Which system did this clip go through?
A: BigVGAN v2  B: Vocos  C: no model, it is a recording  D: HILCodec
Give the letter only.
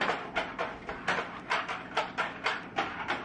A